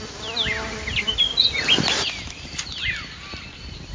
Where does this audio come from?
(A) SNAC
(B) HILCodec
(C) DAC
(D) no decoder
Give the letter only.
D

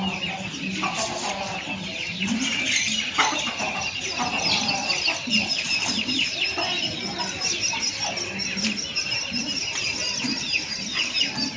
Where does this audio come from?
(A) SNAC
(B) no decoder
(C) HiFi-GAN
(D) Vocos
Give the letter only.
B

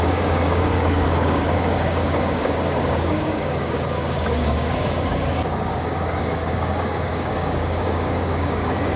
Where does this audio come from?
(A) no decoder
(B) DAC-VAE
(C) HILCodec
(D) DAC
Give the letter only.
D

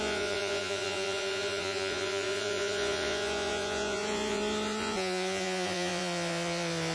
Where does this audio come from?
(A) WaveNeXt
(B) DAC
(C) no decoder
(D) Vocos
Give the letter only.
D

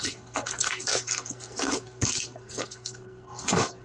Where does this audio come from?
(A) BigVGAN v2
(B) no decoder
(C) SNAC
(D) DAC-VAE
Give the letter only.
C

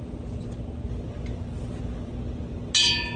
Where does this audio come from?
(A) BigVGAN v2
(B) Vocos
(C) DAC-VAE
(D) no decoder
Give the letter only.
D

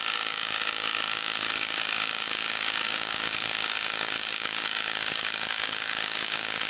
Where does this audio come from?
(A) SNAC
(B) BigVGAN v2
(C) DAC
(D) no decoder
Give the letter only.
C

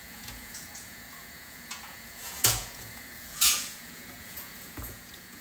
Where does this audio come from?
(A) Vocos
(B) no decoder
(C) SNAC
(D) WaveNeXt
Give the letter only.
A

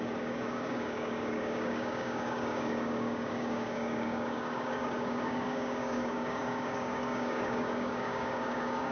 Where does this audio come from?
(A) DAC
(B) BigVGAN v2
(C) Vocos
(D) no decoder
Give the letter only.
A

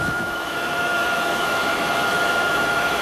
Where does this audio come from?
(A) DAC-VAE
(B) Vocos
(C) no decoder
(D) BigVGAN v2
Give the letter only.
A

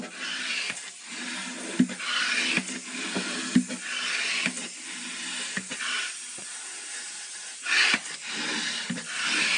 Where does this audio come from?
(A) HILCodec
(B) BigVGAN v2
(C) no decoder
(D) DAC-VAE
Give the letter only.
C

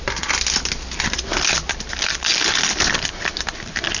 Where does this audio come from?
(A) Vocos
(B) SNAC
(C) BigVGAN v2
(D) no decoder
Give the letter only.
D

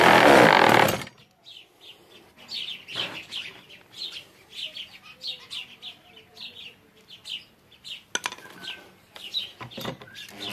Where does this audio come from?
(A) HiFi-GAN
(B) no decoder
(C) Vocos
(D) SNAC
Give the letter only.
B